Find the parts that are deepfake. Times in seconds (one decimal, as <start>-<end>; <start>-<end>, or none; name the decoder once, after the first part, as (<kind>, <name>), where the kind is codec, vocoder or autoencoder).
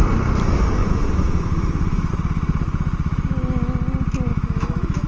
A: 0.8-2.1 (autoencoder, DAC-VAE); 4.3-5.1